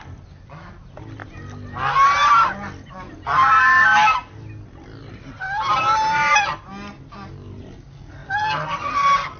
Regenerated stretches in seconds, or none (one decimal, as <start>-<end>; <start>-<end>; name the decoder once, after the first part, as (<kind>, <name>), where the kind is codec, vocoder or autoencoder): none